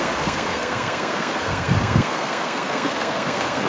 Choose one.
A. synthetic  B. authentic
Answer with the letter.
A